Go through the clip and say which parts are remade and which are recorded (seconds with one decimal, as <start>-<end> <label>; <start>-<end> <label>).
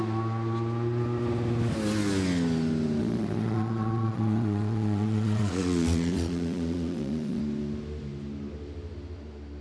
0.0-3.0 recorded; 3.0-7.4 remade; 7.4-9.6 recorded